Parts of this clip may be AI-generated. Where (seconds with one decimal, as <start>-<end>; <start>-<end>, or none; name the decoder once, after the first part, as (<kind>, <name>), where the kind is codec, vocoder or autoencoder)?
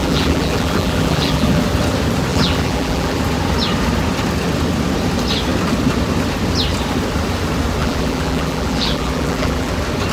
0.0-1.6 (vocoder, BigVGAN v2); 2.3-3.2; 7.8-9.7